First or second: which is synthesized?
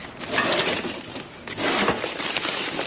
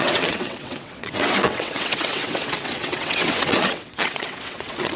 second